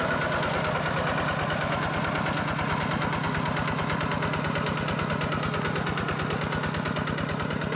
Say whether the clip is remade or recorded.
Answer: recorded